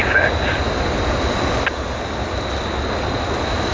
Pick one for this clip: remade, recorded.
recorded